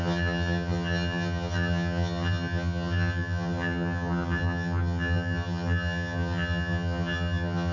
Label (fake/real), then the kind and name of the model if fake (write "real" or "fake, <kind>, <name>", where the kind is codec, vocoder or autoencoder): fake, vocoder, HiFi-GAN